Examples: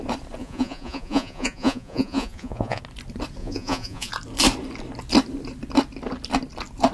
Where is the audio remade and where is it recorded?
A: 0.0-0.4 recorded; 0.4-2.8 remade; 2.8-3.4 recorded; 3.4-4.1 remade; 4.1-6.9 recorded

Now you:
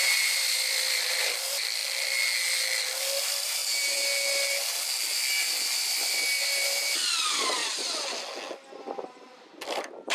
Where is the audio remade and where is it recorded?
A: 0.0-1.8 remade; 1.8-3.2 recorded; 3.2-3.6 remade; 3.6-6.6 recorded; 6.6-7.6 remade; 7.6-8.8 recorded; 8.8-10.1 remade

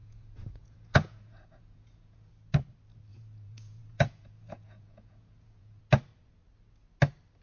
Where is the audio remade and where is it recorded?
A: 0.0-2.3 remade; 2.3-3.1 recorded; 3.1-5.8 remade; 5.8-7.4 recorded

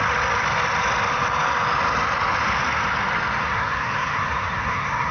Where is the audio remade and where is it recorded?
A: 0.0-3.4 recorded; 3.4-5.1 remade

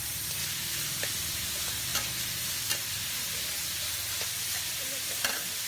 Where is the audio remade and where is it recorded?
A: 0.0-5.7 recorded

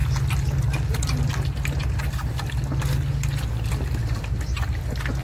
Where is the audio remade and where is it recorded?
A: 0.0-4.0 recorded; 4.0-4.8 remade; 4.8-5.2 recorded

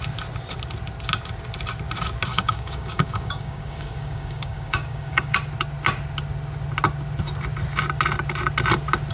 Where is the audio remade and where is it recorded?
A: 0.0-2.3 recorded; 2.3-5.4 remade; 5.4-9.1 recorded